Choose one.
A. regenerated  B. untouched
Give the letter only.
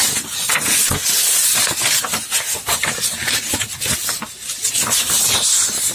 B